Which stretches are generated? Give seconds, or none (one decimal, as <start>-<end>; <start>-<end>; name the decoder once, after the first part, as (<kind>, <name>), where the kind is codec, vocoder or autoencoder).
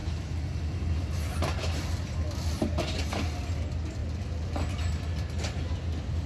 none